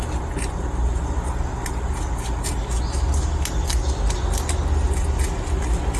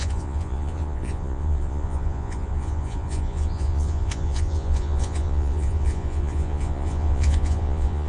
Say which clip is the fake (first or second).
second